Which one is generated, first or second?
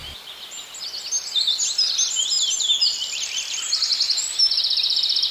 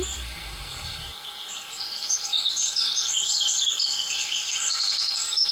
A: second